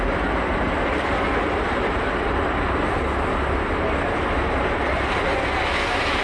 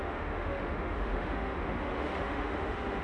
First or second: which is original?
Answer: first